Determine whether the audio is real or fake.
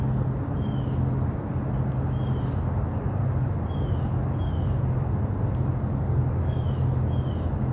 real